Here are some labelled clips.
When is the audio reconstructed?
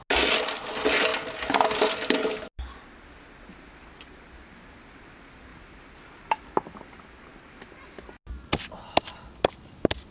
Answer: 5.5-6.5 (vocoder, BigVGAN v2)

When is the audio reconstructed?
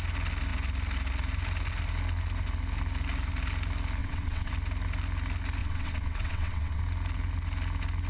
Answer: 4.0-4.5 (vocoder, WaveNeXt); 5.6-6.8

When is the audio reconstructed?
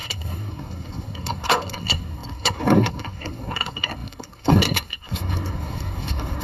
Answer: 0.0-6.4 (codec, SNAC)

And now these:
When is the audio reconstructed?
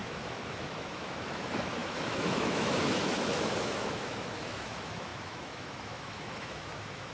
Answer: 0.0-7.1 (autoencoder, DAC-VAE)